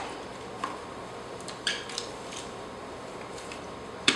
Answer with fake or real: fake